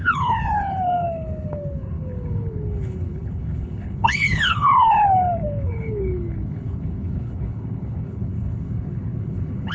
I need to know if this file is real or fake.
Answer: fake